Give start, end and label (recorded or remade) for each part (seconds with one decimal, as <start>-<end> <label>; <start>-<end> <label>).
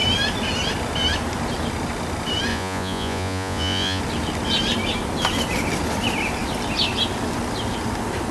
0.0-2.5 recorded; 2.5-4.0 remade; 4.0-8.3 recorded